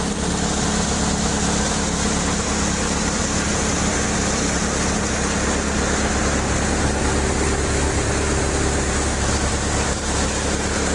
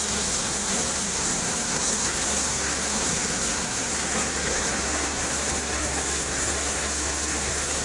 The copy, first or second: second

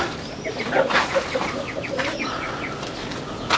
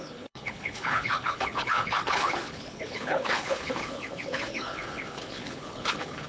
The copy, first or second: second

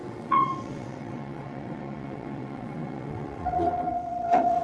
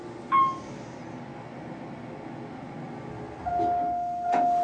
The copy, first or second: first